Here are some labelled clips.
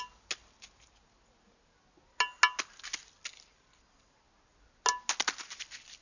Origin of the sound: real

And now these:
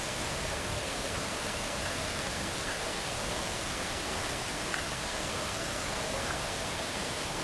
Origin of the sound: fake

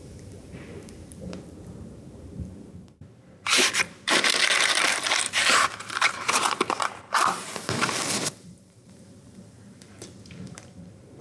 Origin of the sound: fake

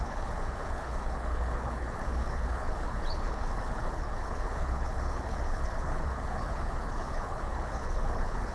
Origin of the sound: fake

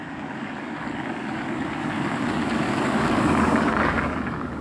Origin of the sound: fake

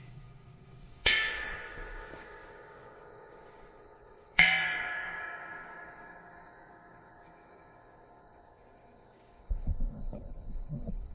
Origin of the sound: fake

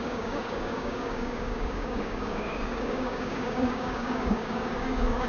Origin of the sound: fake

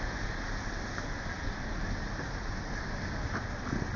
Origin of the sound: real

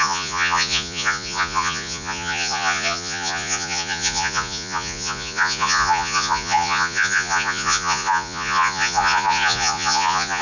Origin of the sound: fake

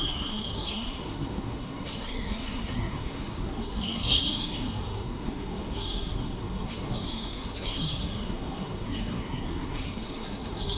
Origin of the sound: fake